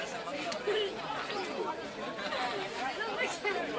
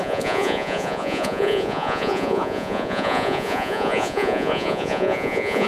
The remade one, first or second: second